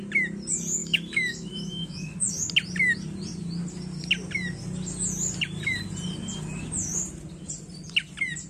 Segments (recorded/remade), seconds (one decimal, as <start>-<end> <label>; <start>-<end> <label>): 0.0-0.8 recorded; 0.8-2.3 remade; 2.3-8.5 recorded